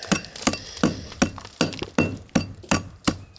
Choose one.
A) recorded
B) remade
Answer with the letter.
A